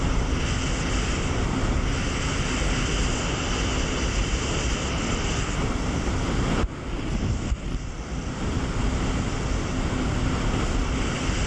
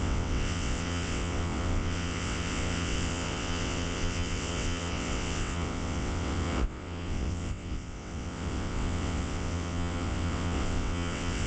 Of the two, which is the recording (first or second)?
first